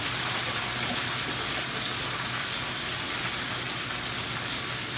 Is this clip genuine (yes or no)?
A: yes